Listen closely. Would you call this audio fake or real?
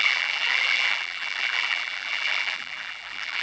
fake